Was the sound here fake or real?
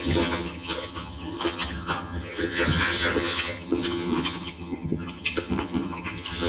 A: fake